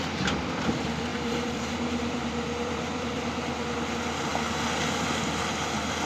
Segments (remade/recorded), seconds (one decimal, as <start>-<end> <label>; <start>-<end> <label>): 0.0-1.1 recorded; 1.1-3.2 remade; 3.2-6.1 recorded